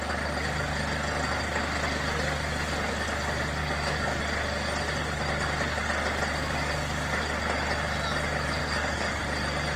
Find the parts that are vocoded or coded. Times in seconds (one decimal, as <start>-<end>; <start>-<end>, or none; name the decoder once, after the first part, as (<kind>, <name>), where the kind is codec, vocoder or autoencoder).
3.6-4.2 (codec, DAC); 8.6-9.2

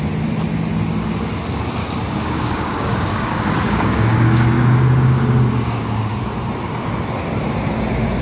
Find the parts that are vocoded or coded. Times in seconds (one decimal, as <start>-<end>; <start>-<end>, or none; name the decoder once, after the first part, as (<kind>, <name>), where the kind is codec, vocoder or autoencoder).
1.8-6.2 (codec, DAC)

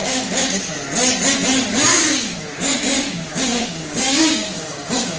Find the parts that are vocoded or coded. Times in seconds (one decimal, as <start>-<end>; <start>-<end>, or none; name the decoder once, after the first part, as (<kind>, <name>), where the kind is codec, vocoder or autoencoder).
0.0-0.6 (codec, DAC); 1.9-5.2

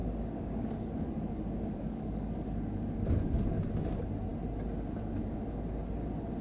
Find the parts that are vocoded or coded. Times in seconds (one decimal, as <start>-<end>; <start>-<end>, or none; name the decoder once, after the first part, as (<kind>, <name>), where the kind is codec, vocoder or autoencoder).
0.0-3.7 (codec, DAC)

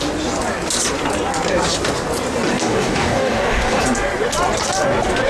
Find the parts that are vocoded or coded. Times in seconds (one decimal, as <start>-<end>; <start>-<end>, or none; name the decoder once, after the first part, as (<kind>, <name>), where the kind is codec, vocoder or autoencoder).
2.6-3.8 (codec, DAC)

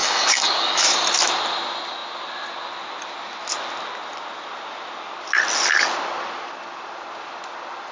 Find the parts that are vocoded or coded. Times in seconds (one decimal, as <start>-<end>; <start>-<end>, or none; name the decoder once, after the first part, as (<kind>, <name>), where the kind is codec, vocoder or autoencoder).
0.0-0.8 (codec, DAC)